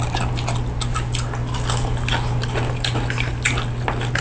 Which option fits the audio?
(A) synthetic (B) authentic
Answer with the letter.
B